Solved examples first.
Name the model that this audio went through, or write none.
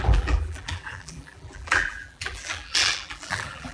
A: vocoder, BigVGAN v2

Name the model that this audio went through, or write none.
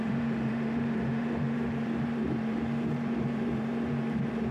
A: vocoder, BigVGAN v2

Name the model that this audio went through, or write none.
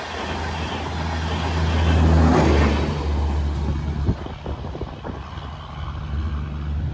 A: none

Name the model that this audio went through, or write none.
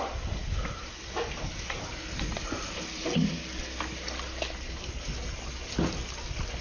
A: none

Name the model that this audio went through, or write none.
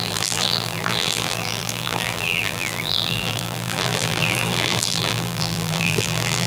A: vocoder, BigVGAN v2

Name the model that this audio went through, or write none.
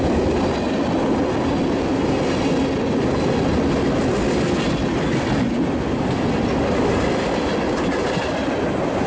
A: none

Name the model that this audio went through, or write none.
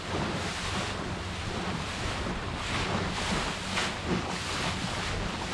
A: none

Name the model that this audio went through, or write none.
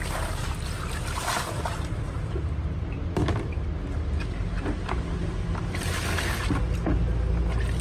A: none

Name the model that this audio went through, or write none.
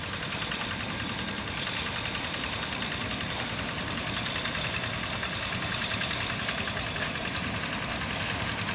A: none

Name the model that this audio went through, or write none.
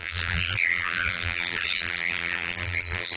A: vocoder, BigVGAN v2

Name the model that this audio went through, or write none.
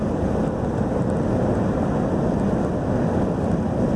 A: none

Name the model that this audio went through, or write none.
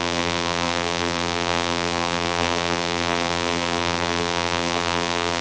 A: vocoder, BigVGAN v2